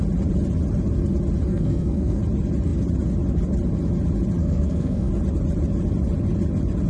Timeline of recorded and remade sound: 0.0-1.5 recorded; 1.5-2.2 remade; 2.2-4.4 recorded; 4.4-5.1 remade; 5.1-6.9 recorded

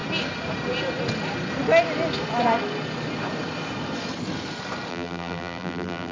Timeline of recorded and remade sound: 0.0-4.9 recorded; 4.9-6.1 remade

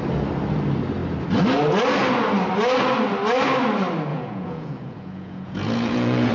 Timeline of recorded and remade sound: 0.0-4.1 recorded; 4.1-6.3 remade

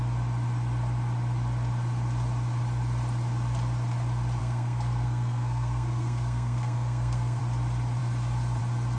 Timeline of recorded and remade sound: 0.0-4.4 recorded; 4.4-7.4 remade; 7.4-9.0 recorded

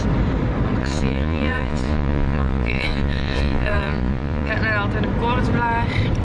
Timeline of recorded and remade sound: 0.0-0.8 recorded; 0.8-4.5 remade; 4.5-6.2 recorded

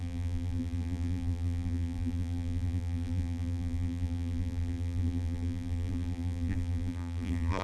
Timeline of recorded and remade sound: 0.0-7.6 remade

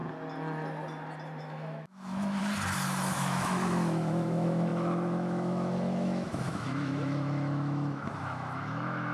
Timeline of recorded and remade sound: 0.0-1.4 recorded; 1.4-2.4 remade; 2.4-3.1 recorded; 3.1-9.1 remade

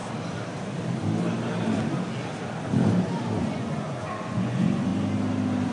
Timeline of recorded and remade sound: 0.0-3.4 recorded; 3.4-4.9 remade; 4.9-5.7 recorded